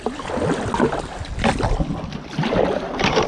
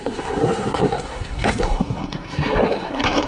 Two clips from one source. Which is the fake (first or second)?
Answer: second